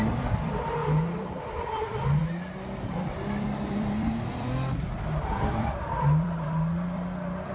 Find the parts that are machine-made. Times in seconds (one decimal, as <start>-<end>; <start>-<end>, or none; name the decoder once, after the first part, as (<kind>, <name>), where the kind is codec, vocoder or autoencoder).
0.0-2.2 (vocoder, BigVGAN v2); 2.9-7.5

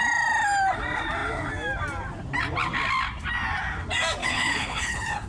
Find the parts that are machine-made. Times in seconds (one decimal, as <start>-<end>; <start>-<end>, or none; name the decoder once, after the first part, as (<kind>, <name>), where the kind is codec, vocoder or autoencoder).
4.2-5.3 (codec, HILCodec)